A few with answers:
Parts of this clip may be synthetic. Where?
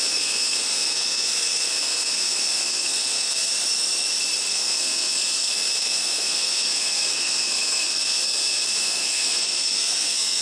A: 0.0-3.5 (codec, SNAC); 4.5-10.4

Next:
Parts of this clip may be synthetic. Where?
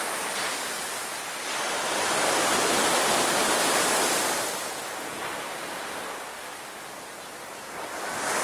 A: none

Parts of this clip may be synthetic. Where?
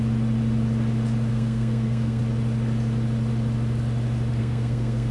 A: 1.3-2.2 (codec, SNAC); 4.4-5.1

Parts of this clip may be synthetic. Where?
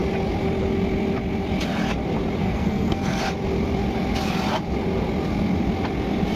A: 2.4-3.2 (codec, SNAC)